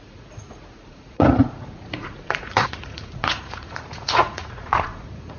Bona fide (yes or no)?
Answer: no